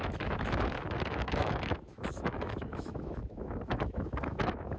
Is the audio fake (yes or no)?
yes